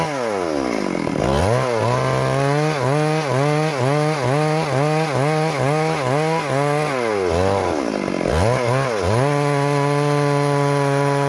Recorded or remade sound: recorded